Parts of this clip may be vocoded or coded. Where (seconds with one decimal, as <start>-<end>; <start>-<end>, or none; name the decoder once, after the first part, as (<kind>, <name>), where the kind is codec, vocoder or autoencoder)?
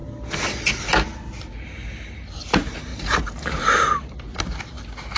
2.9-3.6 (vocoder, BigVGAN v2)